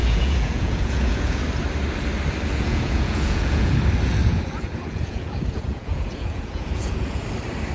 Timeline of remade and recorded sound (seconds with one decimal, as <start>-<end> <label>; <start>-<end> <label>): 0.0-1.4 remade; 1.4-2.5 recorded; 2.5-3.8 remade; 3.8-4.3 recorded; 4.3-7.2 remade; 7.2-7.7 recorded